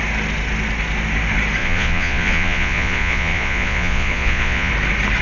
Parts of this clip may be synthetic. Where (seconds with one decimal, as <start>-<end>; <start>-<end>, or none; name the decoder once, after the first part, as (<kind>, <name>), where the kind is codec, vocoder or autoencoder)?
1.6-4.7 (vocoder, Vocos)